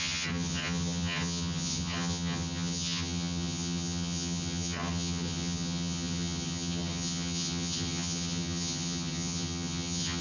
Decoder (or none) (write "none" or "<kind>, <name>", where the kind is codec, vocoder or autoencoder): vocoder, HiFi-GAN